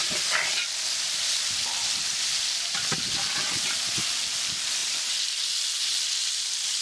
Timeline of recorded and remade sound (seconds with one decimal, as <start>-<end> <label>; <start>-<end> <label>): 0.0-6.8 recorded